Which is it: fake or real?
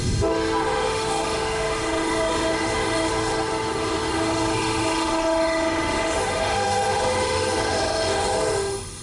fake